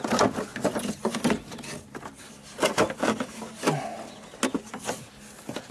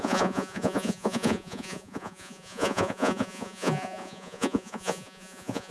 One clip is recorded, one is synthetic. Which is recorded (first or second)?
first